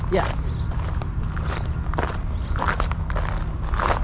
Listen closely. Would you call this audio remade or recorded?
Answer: recorded